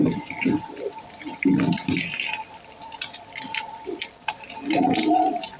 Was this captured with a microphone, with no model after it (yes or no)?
yes